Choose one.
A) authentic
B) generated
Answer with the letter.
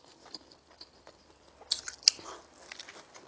A